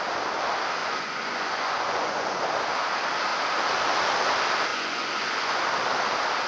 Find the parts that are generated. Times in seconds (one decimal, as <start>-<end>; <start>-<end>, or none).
0.8-2.4; 4.7-5.6